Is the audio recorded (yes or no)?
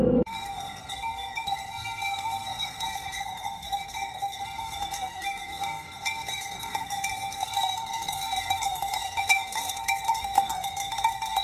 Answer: no